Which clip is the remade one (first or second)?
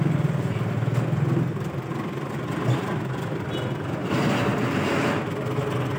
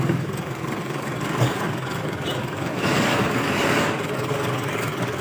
second